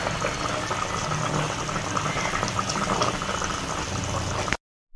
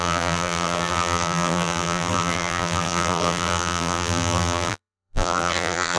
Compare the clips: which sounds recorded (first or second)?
first